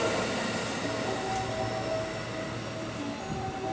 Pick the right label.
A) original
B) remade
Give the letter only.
A